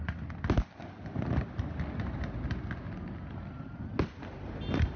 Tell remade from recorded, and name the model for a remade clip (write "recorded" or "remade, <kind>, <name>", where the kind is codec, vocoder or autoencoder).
recorded